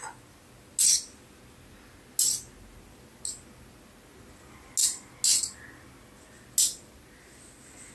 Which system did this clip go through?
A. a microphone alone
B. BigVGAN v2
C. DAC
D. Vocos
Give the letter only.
A